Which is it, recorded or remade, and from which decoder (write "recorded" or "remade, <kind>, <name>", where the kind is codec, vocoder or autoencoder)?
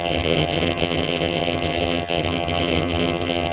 remade, vocoder, HiFi-GAN